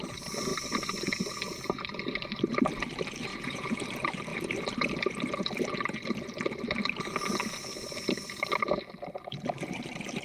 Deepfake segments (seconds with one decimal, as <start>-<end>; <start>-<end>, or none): 3.3-3.8